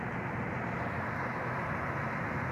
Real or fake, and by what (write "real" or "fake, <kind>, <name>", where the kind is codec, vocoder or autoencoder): real